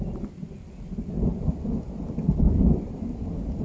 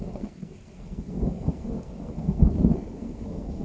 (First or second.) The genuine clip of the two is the first